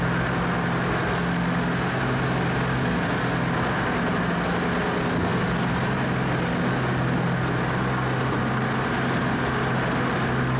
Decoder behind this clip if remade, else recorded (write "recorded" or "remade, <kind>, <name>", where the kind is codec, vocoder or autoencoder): recorded